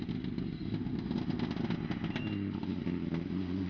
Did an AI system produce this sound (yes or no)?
no